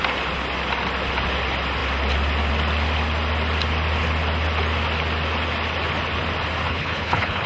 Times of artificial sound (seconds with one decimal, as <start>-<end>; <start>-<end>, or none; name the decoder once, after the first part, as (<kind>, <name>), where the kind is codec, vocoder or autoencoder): 6.7-7.5 (codec, HILCodec)